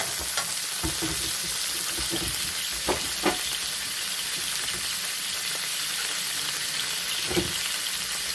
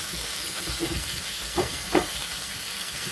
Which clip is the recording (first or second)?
first